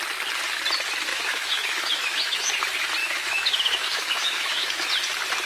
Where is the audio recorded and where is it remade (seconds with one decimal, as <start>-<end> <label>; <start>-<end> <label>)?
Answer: 0.0-1.1 recorded; 1.1-2.5 remade; 2.5-3.0 recorded; 3.0-4.9 remade; 4.9-5.5 recorded